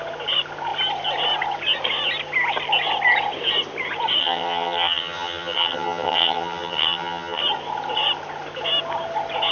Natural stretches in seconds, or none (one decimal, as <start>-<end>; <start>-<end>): 0.0-4.2; 7.4-9.5